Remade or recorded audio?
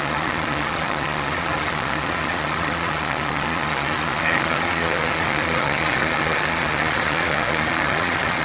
remade